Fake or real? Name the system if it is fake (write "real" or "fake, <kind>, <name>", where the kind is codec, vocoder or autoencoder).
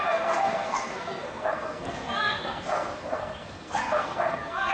fake, codec, SNAC